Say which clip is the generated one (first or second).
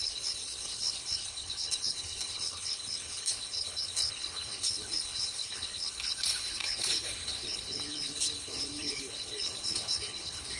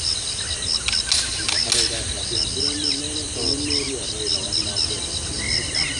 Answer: first